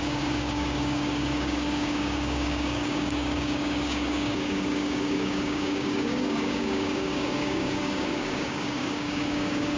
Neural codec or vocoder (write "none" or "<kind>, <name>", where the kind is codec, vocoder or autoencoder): codec, DAC